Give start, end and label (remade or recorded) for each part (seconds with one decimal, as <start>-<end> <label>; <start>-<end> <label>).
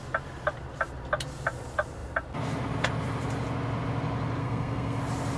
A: 0.0-4.4 recorded; 4.4-5.0 remade; 5.0-5.4 recorded